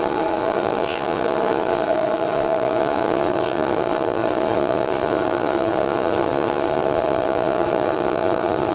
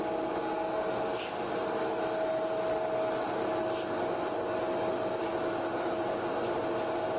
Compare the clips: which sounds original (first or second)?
second